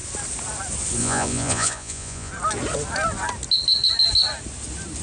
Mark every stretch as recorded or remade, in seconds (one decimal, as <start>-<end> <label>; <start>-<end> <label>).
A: 0.0-1.0 recorded; 1.0-2.3 remade; 2.3-5.0 recorded